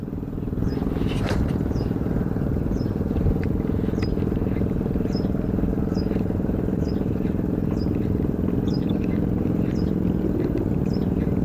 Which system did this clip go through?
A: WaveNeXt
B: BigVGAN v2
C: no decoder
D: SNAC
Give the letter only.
B